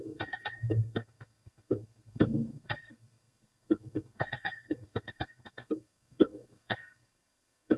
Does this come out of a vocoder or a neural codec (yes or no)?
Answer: yes